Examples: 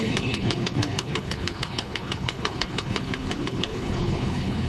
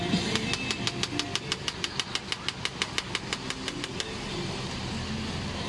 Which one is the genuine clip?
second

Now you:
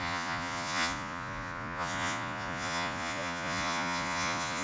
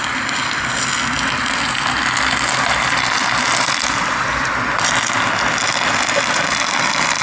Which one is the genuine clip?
second